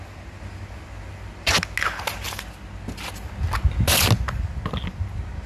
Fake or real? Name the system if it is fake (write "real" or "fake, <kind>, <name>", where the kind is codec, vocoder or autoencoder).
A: real